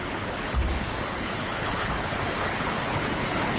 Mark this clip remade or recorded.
remade